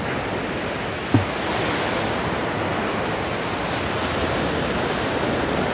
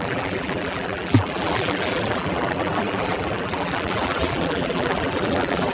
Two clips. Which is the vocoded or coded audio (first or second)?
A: second